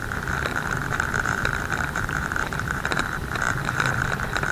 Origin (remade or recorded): remade